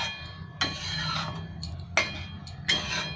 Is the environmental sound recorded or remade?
recorded